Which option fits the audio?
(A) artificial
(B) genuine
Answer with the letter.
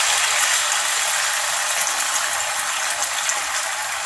B